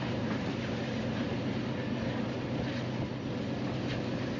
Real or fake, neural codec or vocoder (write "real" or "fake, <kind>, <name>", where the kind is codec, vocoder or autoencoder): real